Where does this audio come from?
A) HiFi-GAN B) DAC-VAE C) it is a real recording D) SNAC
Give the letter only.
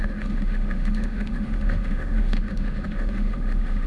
B